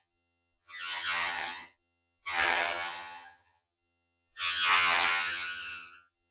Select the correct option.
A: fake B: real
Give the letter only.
A